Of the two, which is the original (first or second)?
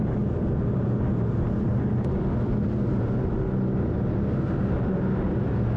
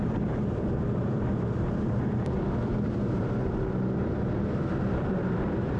first